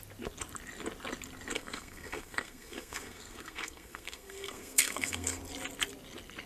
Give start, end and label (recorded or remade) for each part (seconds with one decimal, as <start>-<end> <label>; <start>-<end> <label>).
0.0-1.5 recorded; 1.5-5.4 remade; 5.4-6.5 recorded